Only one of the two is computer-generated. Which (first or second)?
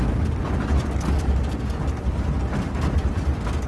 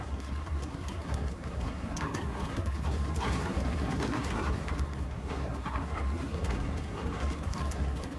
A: second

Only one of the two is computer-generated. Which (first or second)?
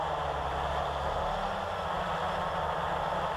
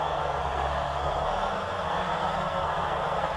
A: second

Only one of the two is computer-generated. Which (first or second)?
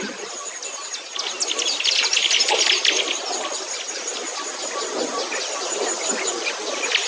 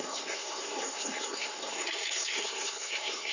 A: second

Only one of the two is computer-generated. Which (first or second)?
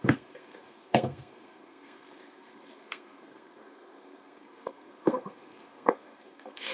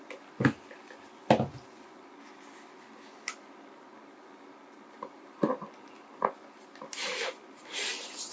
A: first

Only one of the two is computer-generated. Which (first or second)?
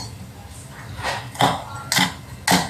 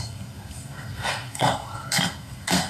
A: second